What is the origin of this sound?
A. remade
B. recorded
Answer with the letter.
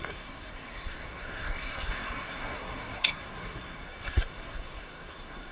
A